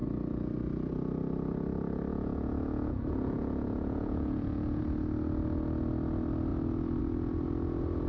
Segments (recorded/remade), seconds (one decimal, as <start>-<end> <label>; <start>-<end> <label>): 0.0-2.1 recorded; 2.1-4.8 remade; 4.8-8.1 recorded